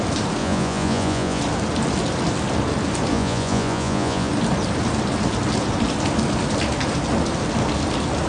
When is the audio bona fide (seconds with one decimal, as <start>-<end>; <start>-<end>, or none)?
0.0-0.4; 1.4-3.1; 4.3-8.3